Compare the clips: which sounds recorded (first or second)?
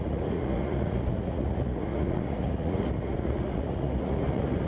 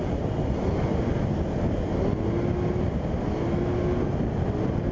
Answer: second